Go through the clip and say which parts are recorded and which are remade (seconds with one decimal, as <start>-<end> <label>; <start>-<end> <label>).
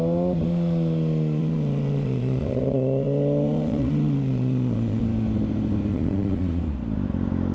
0.0-1.4 recorded; 1.4-5.0 remade; 5.0-5.9 recorded; 5.9-6.6 remade; 6.6-7.5 recorded